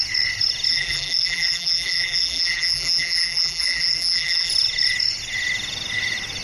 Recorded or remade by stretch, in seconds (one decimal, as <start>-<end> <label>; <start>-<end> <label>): 0.0-0.7 recorded; 0.7-4.5 remade; 4.5-6.4 recorded